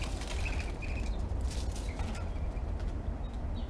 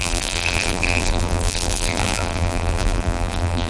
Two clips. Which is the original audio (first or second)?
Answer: first